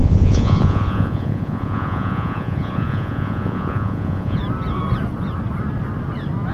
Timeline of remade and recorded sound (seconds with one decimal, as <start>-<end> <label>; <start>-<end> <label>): 0.0-4.4 remade; 4.4-6.5 recorded